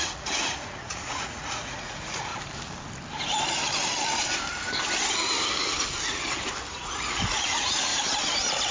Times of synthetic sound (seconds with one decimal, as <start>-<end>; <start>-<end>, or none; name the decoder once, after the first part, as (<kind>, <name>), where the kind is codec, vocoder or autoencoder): 0.0-2.3 (vocoder, Vocos); 6.7-7.9